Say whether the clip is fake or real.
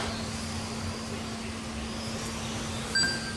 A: real